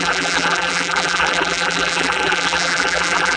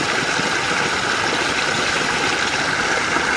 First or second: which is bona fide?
second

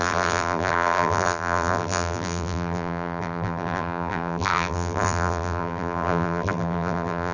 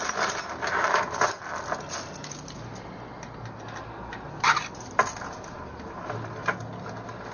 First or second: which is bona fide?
second